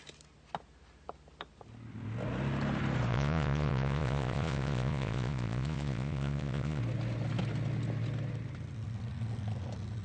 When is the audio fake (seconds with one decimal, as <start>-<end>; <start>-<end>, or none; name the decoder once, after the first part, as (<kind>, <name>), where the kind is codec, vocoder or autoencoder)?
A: 3.1-6.8 (vocoder, Vocos)

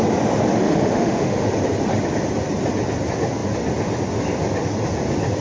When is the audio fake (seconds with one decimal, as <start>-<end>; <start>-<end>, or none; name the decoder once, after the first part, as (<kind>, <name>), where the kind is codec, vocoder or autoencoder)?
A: 0.5-1.5 (autoencoder, DAC-VAE)

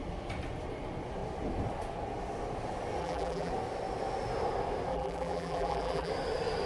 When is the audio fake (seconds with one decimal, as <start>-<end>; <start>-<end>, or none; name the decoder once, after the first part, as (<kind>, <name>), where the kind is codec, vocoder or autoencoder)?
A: 3.0-3.5 (vocoder, BigVGAN v2); 4.9-6.1

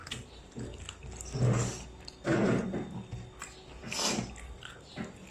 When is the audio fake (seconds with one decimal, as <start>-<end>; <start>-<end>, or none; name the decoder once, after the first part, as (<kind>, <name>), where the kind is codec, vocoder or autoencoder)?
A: none

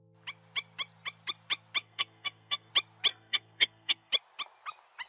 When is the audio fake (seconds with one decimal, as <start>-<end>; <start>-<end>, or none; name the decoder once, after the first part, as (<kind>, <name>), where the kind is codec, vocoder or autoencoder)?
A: 1.8-2.7 (codec, SNAC); 3.1-4.1

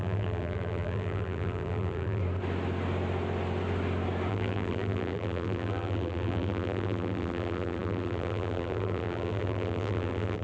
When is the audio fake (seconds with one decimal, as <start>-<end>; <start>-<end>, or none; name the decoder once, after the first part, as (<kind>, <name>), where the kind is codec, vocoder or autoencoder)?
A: 0.0-2.2 (vocoder, BigVGAN v2); 4.3-10.4

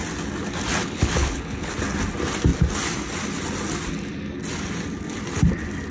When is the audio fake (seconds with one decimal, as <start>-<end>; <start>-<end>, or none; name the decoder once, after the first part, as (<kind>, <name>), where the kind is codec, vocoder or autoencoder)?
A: 0.8-1.7 (codec, HILCodec)

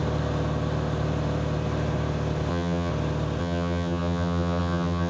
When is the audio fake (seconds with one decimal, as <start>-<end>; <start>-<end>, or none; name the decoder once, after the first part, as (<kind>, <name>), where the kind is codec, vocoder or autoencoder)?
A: 2.5-2.9 (vocoder, HiFi-GAN); 3.4-5.1